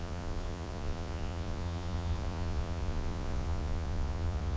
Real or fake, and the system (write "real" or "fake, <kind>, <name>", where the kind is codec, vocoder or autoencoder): fake, vocoder, Vocos